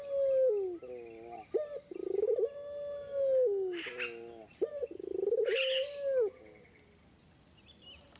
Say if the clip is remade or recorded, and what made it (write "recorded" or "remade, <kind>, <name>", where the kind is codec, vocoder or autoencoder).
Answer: recorded